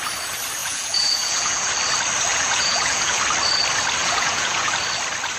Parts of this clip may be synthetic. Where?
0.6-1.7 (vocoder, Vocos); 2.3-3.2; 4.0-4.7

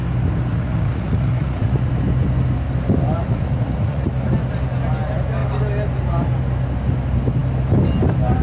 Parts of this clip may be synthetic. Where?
0.5-1.9 (vocoder, Vocos); 3.2-4.1